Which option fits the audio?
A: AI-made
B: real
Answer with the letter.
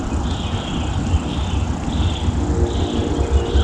B